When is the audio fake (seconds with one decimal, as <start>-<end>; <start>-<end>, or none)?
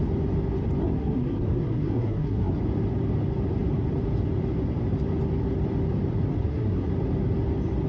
0.8-2.6; 6.4-6.9